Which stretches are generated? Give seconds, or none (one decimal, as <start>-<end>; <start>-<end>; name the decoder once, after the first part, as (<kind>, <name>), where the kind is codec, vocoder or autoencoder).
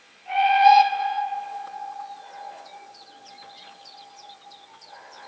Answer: 0.0-5.3 (vocoder, Vocos)